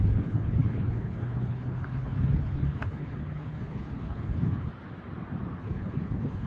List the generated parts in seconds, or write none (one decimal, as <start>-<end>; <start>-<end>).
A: 0.0-4.7; 5.6-6.5